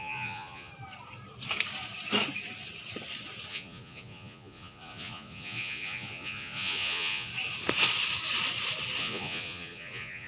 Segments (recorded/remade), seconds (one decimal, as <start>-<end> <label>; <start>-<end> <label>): 0.0-0.7 remade; 0.7-3.5 recorded; 3.5-7.3 remade; 7.3-9.0 recorded; 9.0-10.3 remade